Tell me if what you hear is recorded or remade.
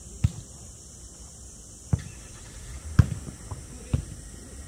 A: recorded